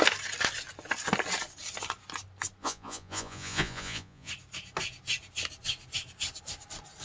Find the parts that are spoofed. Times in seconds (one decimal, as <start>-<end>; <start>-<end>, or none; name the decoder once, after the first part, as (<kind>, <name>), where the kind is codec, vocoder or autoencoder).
2.6-4.3 (vocoder, Vocos)